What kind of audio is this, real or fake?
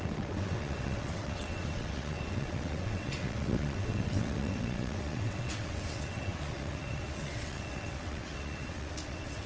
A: fake